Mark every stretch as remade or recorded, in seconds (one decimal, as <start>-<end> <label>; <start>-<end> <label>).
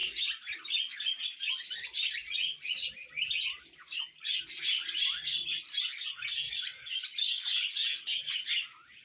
0.0-7.5 recorded; 7.5-8.5 remade; 8.5-9.0 recorded